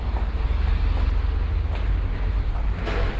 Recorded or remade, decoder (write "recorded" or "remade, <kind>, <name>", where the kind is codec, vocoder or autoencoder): recorded